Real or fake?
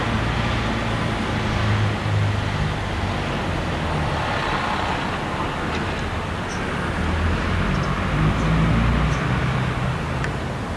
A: real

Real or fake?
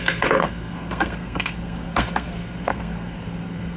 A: fake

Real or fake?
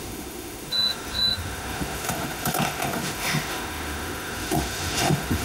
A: fake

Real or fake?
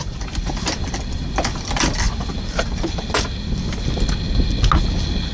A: real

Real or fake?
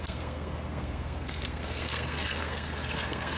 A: fake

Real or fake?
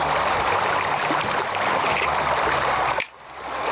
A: real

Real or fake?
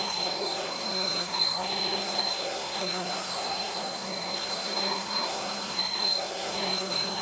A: fake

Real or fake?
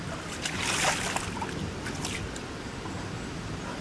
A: real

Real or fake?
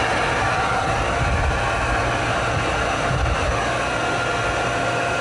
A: real